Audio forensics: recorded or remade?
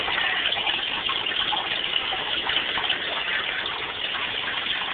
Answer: recorded